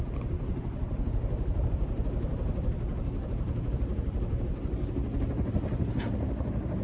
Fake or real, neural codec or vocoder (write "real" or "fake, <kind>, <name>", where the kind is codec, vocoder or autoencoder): real